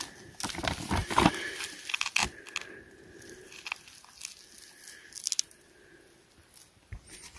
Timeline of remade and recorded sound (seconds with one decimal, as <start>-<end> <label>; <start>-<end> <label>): 0.0-1.0 recorded; 1.0-1.5 remade; 1.5-6.6 recorded; 6.6-7.4 remade